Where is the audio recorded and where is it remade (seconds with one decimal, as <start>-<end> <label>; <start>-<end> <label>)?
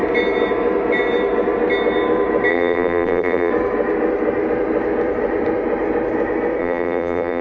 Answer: 0.0-2.5 recorded; 2.5-3.5 remade; 3.5-6.6 recorded; 6.6-7.4 remade